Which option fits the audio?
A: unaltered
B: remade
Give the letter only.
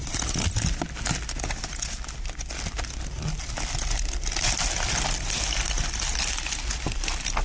A